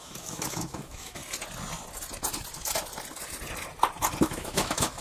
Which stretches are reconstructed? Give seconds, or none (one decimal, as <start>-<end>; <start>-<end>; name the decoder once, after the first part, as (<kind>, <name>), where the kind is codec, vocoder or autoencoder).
0.0-1.2 (autoencoder, DAC-VAE); 4.2-5.0